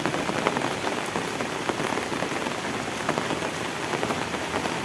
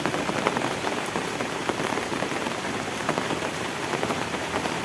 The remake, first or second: second